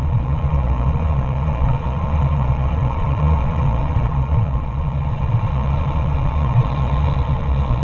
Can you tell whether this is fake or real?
fake